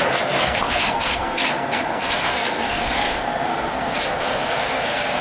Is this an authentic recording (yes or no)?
no